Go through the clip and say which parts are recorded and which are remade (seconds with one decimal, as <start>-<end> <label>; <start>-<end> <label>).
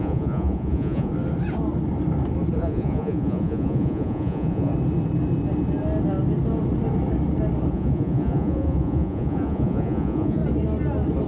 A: 0.0-1.1 remade; 1.1-2.6 recorded; 2.6-4.7 remade; 4.7-7.7 recorded; 7.7-10.4 remade; 10.4-11.3 recorded